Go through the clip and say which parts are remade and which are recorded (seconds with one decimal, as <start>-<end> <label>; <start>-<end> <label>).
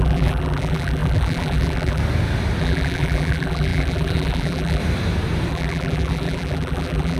0.0-2.0 remade; 2.0-2.6 recorded; 2.6-4.8 remade; 4.8-5.5 recorded; 5.5-7.2 remade